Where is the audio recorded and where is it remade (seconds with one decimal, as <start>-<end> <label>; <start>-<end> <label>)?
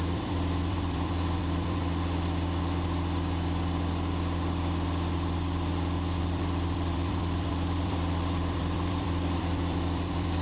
0.0-1.8 remade; 1.8-6.2 recorded; 6.2-10.4 remade